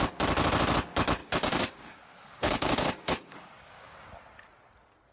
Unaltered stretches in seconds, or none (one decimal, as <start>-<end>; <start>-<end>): 0.0-1.2; 4.1-5.1